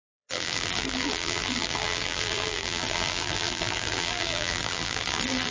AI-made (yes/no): yes